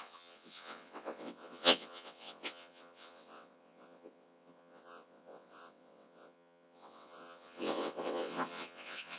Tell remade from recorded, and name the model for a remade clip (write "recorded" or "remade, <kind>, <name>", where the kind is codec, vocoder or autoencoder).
remade, vocoder, WaveNeXt